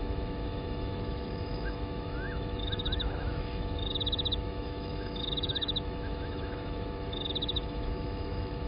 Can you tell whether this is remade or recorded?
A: remade